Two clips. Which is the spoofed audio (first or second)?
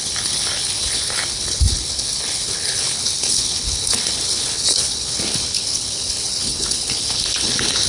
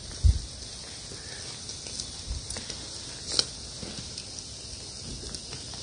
first